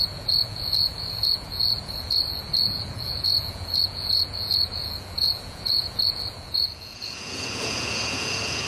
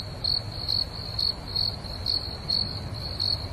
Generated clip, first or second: first